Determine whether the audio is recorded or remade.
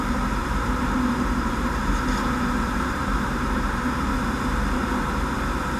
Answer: remade